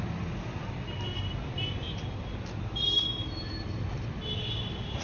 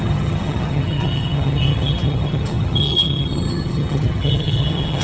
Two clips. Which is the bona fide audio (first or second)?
first